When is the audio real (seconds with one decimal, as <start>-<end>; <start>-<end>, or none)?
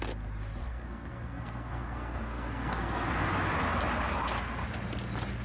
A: 0.0-0.6; 3.3-5.4